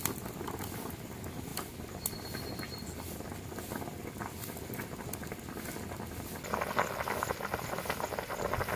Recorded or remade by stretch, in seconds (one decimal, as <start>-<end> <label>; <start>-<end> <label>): 0.0-8.8 recorded